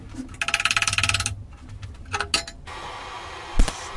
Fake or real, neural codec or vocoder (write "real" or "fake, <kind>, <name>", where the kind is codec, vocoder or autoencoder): real